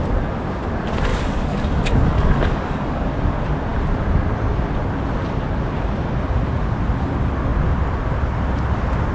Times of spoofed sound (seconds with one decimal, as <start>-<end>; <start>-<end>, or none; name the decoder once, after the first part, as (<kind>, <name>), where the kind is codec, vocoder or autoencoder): 1.1-3.1 (codec, DAC)

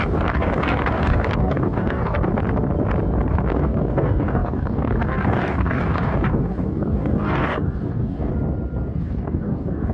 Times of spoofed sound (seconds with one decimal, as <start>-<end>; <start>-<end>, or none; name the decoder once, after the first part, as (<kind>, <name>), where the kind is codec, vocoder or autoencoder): 0.0-2.3 (codec, DAC); 3.3-8.3; 9.0-9.9